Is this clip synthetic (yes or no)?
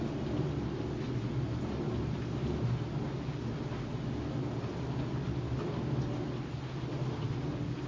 no